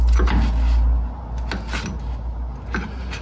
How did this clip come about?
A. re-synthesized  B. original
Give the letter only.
B